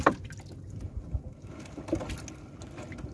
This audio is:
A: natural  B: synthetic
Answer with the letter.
A